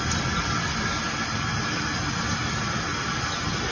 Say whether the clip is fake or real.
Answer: real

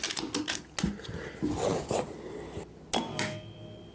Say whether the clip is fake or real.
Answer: real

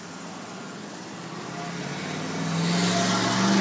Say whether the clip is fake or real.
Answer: real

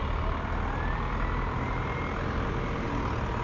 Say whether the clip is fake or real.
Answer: real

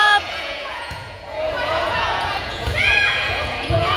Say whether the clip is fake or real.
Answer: fake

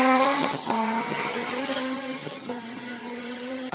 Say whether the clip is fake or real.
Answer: fake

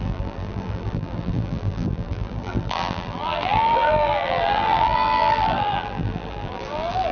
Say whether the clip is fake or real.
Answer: fake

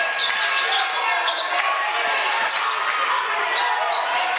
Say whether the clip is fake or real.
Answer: real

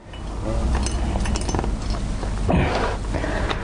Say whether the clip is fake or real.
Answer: real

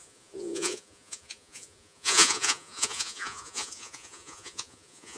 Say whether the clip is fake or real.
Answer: fake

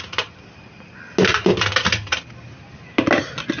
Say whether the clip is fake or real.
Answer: real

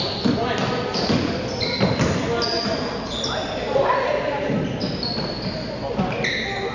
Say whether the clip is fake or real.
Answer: real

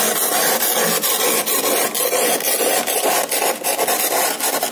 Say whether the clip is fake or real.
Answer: real